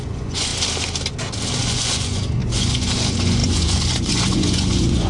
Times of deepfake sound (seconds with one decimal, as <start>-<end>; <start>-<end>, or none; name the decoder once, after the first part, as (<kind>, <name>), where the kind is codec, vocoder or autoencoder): 0.0-0.5 (vocoder, Vocos); 1.6-5.1